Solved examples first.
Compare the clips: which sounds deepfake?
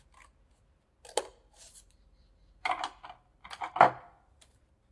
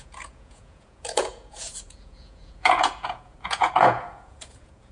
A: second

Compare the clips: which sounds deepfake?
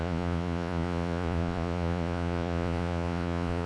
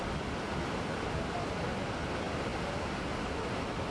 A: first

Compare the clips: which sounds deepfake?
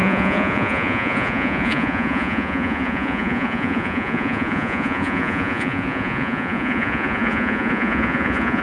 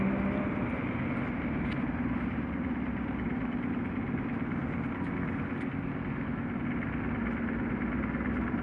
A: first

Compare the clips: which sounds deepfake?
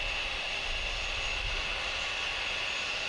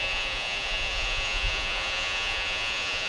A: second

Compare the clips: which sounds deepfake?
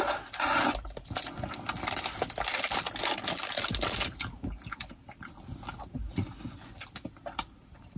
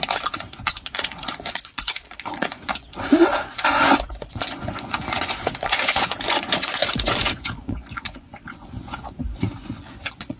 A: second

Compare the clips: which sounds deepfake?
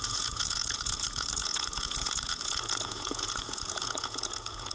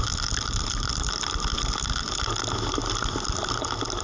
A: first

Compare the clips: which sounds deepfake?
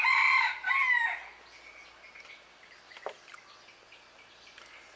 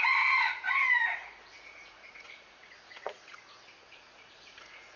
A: second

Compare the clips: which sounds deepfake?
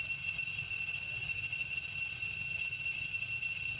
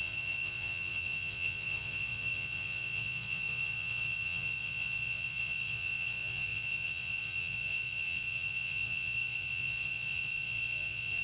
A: second